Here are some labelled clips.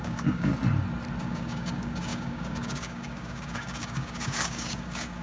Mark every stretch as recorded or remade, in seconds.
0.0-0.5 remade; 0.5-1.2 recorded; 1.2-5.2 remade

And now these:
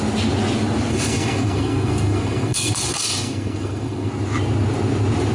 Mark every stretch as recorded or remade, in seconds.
0.0-0.9 recorded; 0.9-4.1 remade; 4.1-5.3 recorded

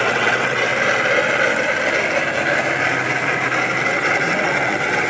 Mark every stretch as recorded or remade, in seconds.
0.0-0.7 remade; 0.7-3.8 recorded; 3.8-5.1 remade

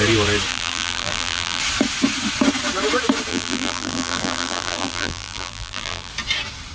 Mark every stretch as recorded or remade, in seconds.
0.0-0.5 recorded; 0.5-1.6 remade; 1.6-3.3 recorded; 3.3-6.1 remade; 6.1-6.7 recorded